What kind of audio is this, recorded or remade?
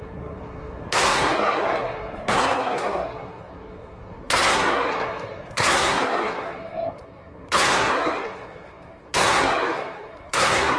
remade